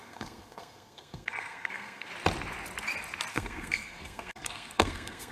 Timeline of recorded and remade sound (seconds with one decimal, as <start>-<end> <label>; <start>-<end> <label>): 0.0-2.1 remade; 2.1-3.3 recorded; 3.3-5.3 remade